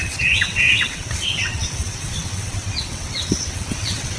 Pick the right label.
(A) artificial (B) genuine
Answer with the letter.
A